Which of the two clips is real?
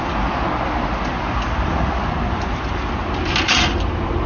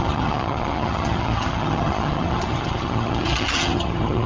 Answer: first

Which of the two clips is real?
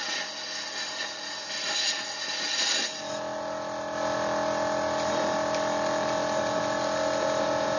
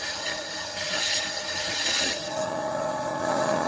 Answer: first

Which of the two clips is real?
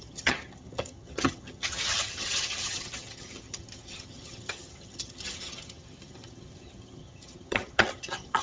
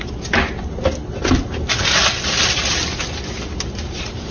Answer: second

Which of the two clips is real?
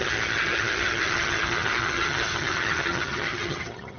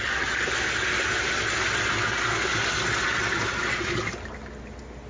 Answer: second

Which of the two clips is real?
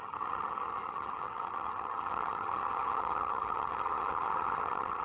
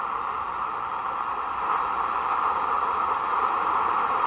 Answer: second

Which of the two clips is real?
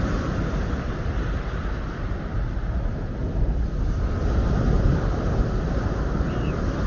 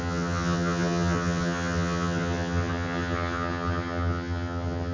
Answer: first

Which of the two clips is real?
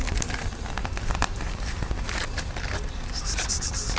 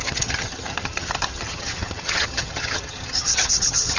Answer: first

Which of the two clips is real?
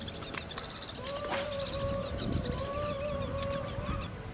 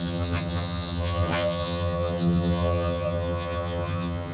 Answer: first